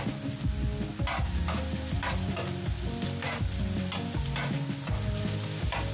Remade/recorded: recorded